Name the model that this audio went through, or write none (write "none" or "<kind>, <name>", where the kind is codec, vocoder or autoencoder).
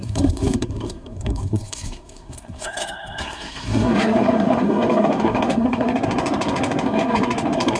codec, SNAC